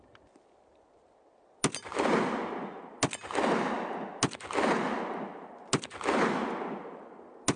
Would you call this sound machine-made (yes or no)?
no